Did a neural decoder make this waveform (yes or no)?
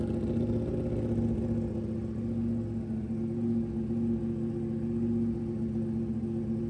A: no